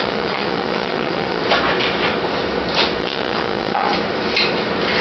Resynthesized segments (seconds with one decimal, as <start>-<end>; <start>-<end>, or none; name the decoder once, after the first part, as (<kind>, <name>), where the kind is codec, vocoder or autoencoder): 0.0-1.4 (vocoder, Vocos); 3.0-3.9

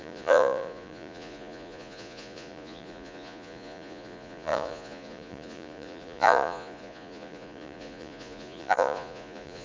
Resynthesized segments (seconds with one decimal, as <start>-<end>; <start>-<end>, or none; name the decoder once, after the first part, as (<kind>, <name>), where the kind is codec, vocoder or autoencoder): 0.0-9.6 (vocoder, Vocos)

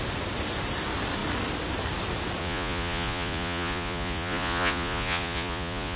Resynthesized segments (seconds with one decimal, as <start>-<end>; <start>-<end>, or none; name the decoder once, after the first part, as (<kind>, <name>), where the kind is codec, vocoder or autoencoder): 2.4-6.0 (vocoder, Vocos)

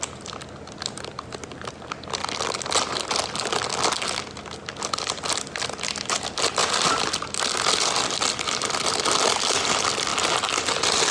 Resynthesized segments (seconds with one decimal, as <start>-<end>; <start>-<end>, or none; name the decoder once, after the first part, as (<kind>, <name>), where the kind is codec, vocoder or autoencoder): none

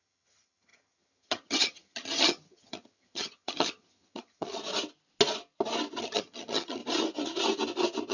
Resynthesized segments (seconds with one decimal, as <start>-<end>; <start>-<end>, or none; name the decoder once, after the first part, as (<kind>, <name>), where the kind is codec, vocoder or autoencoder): 0.0-4.6 (vocoder, HiFi-GAN); 6.0-6.8